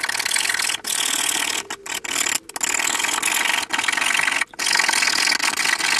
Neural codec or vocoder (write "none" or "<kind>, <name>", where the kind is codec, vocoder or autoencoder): none